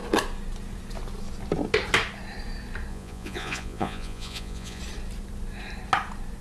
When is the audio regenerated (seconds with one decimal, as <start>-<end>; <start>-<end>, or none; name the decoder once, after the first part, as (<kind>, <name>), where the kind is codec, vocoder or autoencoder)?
2.9-4.8 (vocoder, Vocos)